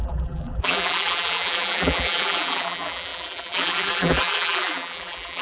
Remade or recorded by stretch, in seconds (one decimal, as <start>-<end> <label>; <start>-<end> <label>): 0.0-5.4 remade